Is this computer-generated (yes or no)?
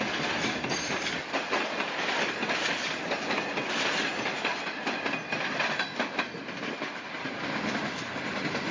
no